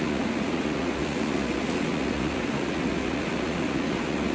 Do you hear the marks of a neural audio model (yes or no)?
yes